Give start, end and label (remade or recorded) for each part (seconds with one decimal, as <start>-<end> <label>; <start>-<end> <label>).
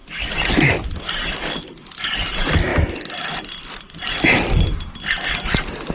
0.0-5.9 recorded